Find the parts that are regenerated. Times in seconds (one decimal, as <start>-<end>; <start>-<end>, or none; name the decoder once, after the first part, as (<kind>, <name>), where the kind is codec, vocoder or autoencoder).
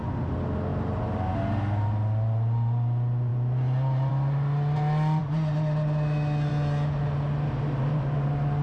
none